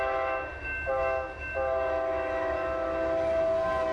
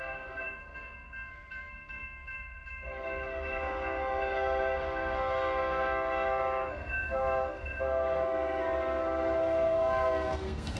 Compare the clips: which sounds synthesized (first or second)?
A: second